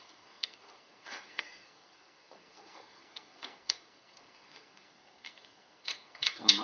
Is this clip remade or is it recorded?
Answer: remade